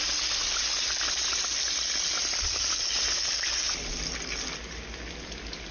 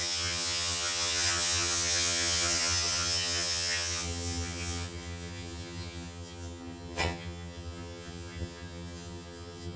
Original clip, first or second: first